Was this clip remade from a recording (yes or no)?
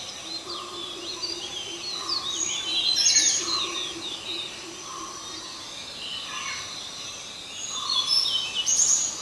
no